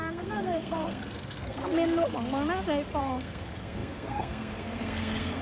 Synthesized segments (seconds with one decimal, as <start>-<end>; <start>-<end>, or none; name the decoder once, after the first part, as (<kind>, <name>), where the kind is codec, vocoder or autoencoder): 0.0-1.6 (codec, SNAC); 3.0-5.4

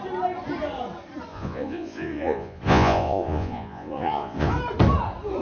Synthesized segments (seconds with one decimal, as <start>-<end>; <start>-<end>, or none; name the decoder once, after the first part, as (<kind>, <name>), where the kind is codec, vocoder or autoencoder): 1.3-4.5 (vocoder, Vocos)

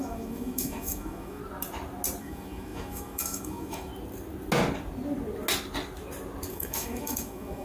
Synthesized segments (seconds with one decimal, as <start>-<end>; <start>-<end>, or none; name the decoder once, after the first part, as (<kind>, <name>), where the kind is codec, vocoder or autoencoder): 0.0-1.4 (autoencoder, DAC-VAE); 2.2-3.9; 6.5-7.6

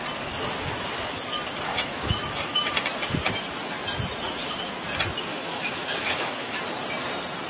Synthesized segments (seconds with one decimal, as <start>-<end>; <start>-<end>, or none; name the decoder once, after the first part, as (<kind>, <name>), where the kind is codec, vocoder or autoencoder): 1.7-2.6 (autoencoder, DAC-VAE); 5.3-6.5

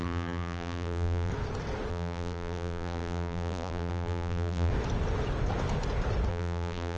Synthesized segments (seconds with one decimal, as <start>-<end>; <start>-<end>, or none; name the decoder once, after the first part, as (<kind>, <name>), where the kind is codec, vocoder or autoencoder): 0.0-1.3 (vocoder, BigVGAN v2); 1.9-4.7; 6.3-7.0

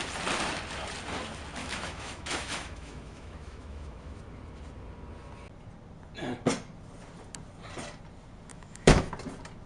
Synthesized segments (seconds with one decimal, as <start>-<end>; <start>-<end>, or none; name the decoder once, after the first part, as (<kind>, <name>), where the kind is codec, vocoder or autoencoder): 1.6-4.2 (autoencoder, DAC-VAE); 8.5-9.1

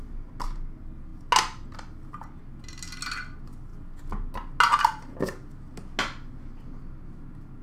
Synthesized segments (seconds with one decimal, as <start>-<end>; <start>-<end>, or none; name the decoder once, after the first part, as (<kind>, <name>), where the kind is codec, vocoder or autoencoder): none

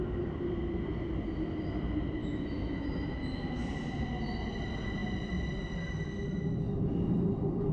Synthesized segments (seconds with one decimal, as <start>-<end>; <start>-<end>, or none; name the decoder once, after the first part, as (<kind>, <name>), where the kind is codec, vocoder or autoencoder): 2.2-3.6 (autoencoder, DAC-VAE)